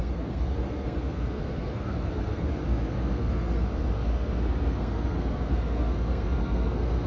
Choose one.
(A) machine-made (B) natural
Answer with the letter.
A